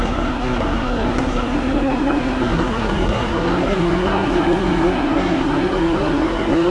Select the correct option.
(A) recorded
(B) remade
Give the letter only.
B